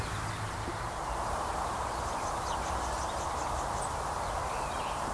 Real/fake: real